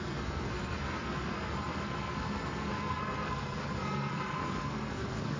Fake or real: fake